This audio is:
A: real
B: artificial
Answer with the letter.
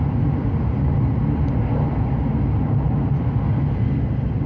A